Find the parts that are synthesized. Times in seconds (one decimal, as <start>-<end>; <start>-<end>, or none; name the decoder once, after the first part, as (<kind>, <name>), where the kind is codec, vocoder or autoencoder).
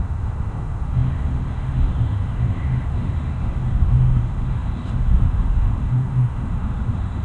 0.0-7.2 (autoencoder, DAC-VAE)